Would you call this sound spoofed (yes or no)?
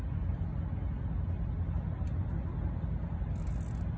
no